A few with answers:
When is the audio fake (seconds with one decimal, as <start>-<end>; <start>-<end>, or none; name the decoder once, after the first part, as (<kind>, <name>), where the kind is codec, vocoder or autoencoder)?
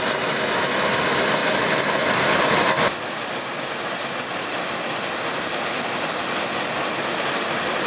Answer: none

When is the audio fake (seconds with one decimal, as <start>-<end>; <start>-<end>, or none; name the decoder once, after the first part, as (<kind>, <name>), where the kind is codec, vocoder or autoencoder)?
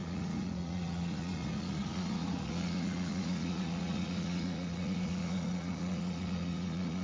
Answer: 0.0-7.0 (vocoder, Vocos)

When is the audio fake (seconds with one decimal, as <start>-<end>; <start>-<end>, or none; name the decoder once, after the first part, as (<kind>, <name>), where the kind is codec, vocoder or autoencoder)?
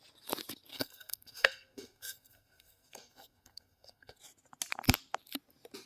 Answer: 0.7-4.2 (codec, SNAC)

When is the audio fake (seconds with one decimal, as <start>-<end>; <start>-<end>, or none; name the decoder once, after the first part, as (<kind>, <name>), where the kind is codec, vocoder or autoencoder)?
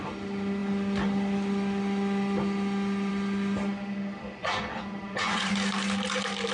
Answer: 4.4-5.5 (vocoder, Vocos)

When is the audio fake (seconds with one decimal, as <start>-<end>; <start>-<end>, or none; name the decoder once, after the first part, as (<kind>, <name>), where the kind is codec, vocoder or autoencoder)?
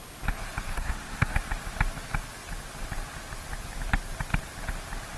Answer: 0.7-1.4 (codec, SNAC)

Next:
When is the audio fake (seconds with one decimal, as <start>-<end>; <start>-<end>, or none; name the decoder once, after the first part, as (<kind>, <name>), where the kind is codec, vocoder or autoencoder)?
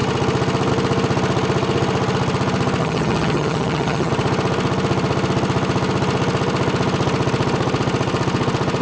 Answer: 2.8-4.1 (vocoder, HiFi-GAN)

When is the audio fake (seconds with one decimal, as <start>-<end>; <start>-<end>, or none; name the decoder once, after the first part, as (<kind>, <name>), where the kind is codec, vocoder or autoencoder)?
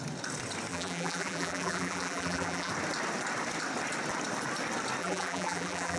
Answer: 0.7-2.7 (vocoder, BigVGAN v2); 5.0-6.0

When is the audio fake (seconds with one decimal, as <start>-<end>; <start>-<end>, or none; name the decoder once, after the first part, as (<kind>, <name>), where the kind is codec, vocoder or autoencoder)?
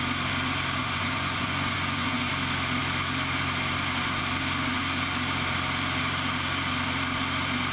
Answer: 0.8-2.3 (vocoder, Vocos)